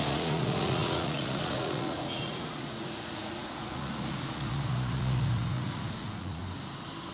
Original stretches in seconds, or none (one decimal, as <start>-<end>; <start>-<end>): 6.4-7.1